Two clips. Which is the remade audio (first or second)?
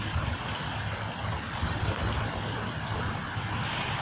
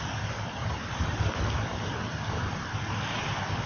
second